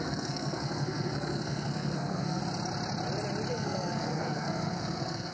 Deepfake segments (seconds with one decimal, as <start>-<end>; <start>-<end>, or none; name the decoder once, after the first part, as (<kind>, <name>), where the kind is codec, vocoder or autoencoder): 0.0-2.4 (codec, SNAC); 3.5-5.3